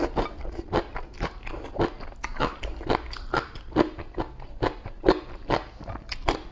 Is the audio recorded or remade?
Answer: recorded